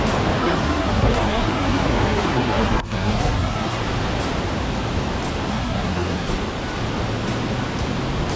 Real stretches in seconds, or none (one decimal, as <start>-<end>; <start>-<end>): 0.0-0.4; 3.8-5.5; 6.3-8.4